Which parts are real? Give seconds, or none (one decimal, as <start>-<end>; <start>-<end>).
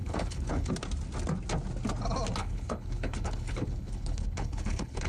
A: 0.7-2.4